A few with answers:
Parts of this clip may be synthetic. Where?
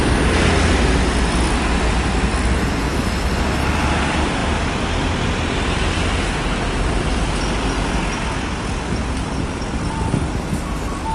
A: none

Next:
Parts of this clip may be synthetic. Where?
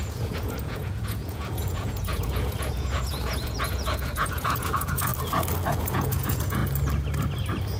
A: 0.0-5.1 (vocoder, Vocos); 5.8-6.6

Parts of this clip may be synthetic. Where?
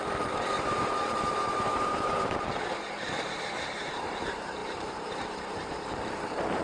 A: 0.0-6.6 (vocoder, BigVGAN v2)